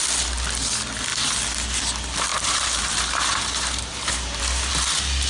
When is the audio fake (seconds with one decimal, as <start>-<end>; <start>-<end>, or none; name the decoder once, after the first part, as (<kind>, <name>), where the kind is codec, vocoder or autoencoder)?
2.3-4.4 (vocoder, BigVGAN v2)